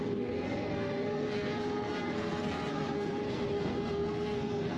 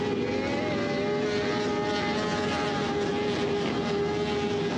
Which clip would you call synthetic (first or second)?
first